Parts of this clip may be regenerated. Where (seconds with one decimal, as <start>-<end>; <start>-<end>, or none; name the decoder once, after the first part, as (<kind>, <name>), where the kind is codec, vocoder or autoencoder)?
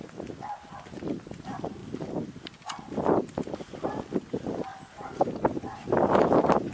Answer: none